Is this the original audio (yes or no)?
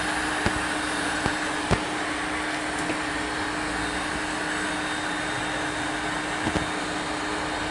yes